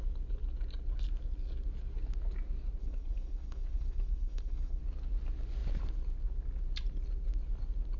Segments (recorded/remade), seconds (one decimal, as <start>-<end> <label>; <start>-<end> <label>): 0.0-2.8 recorded; 2.8-4.8 remade; 4.8-8.0 recorded